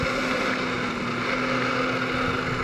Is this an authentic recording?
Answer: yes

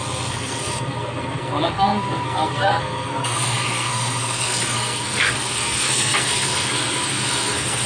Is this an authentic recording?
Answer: no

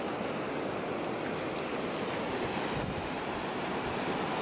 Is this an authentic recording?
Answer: yes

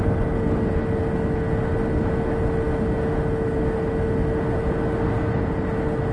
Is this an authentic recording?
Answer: yes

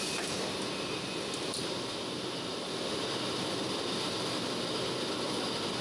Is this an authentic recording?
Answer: yes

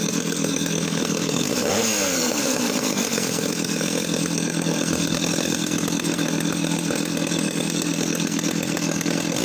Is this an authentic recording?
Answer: no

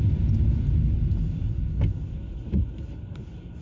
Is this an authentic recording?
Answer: yes